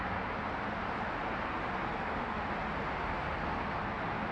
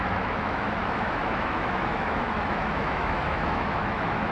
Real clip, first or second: first